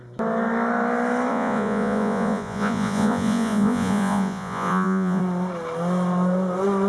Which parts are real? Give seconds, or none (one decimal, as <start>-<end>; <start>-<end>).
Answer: 0.0-1.3; 5.2-6.9